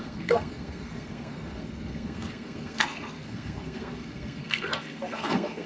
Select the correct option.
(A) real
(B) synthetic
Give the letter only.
B